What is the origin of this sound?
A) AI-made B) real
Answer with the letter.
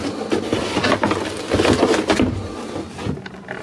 B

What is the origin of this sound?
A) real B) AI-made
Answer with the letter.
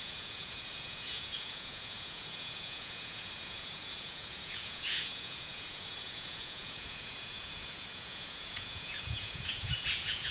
B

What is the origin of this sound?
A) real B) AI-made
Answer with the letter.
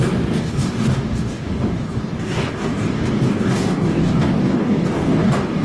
B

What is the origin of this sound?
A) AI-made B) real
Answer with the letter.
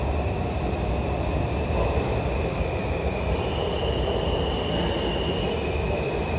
B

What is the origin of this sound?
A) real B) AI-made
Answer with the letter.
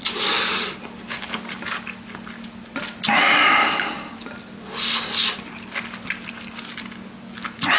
A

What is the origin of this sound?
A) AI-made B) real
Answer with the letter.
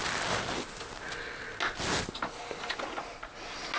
B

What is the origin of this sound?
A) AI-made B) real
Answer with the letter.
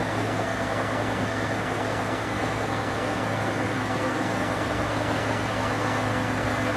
A